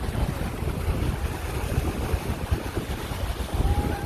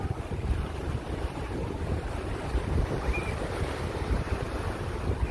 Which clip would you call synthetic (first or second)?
second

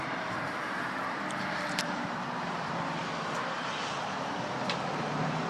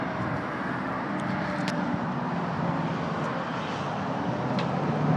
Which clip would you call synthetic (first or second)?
first